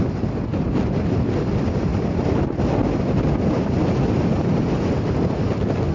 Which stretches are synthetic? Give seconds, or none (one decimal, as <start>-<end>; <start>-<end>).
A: none